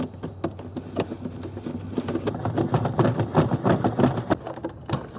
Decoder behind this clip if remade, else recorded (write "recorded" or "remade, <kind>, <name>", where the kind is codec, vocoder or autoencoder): recorded